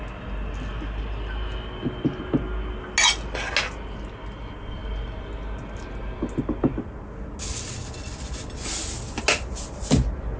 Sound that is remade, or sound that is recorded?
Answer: recorded